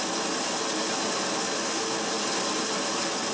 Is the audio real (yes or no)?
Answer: yes